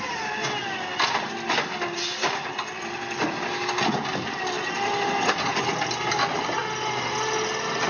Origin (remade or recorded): recorded